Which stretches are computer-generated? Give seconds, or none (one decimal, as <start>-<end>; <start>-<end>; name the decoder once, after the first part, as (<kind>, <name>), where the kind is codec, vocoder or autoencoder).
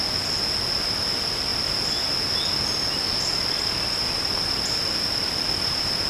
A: none